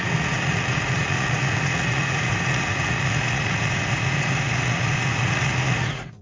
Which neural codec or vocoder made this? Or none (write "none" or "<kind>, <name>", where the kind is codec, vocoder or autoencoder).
vocoder, Vocos